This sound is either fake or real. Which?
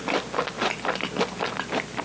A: real